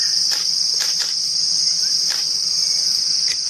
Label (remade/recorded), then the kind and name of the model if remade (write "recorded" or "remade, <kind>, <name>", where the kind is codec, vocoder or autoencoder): remade, vocoder, BigVGAN v2